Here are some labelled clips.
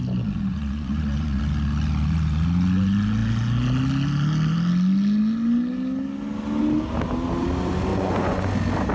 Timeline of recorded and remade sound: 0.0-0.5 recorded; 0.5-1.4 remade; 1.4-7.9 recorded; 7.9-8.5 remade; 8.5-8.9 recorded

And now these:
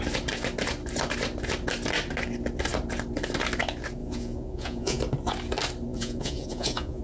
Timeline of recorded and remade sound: 0.0-4.0 recorded; 4.0-5.0 remade; 5.0-5.9 recorded; 5.9-7.0 remade